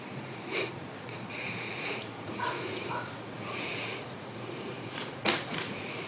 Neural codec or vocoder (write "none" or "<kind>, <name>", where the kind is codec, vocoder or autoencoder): vocoder, Vocos